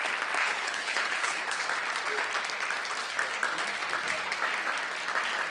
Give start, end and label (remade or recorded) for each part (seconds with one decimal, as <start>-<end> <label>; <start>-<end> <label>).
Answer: 0.0-0.4 recorded; 0.4-1.6 remade; 1.6-5.5 recorded